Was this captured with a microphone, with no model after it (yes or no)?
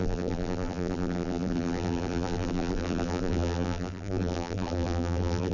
no